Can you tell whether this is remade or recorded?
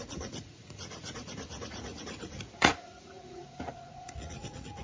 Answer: remade